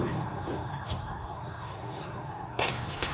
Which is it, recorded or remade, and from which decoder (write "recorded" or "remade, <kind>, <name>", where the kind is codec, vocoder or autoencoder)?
remade, codec, SNAC